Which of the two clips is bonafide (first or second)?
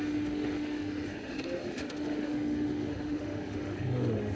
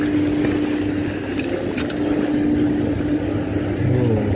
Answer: second